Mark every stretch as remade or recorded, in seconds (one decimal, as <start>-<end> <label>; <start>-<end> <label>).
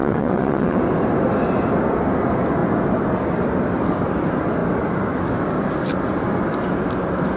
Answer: 0.0-0.8 remade; 0.8-7.4 recorded